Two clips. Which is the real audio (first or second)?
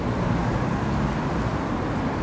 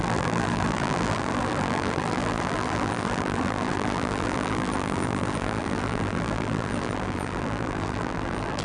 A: first